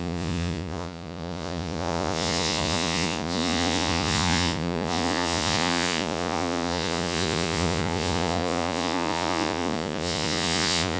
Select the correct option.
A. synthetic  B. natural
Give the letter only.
A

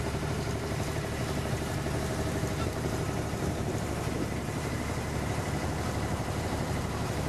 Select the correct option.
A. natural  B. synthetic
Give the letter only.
B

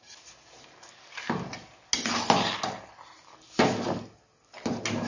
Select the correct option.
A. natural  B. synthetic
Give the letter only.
A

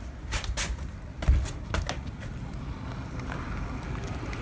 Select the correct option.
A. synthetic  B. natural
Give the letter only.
B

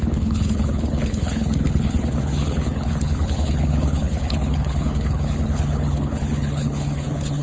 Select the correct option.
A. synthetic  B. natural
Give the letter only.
A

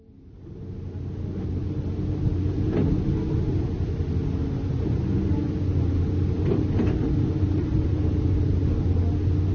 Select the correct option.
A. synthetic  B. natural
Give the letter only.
B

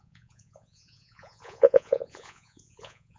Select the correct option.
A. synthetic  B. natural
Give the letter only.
A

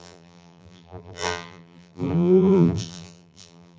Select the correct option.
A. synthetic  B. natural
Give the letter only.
A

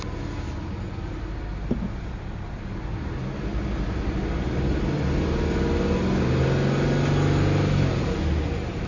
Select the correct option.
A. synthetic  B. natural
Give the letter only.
B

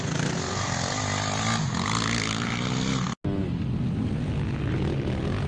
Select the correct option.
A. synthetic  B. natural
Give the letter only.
B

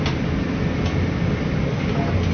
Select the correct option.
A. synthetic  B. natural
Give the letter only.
B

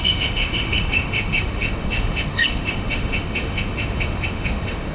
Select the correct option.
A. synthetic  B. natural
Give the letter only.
A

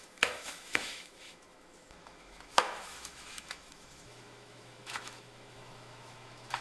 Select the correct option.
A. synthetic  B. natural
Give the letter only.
A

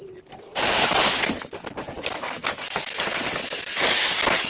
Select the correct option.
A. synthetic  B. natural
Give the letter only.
B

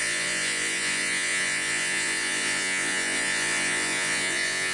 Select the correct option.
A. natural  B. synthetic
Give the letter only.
B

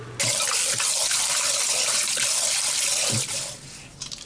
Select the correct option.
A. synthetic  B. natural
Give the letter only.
B